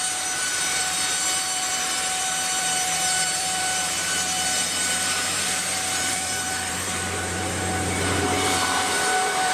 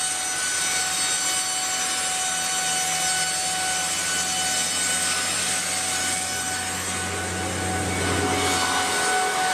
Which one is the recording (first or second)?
second